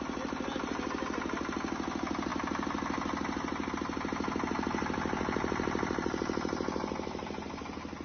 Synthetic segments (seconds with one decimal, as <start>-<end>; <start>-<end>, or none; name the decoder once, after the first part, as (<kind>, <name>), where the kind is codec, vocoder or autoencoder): none